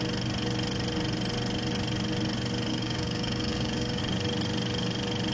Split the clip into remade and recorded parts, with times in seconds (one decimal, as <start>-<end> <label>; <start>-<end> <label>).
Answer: 0.0-2.7 recorded; 2.7-4.0 remade; 4.0-5.3 recorded